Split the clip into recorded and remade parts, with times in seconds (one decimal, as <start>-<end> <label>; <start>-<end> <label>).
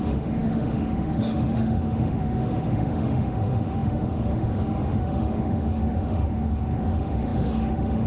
0.0-8.1 remade